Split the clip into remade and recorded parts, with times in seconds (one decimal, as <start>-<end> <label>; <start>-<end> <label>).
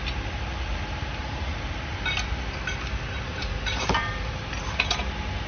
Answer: 0.0-1.2 recorded; 1.2-1.7 remade; 1.7-3.3 recorded; 3.3-4.5 remade; 4.5-5.5 recorded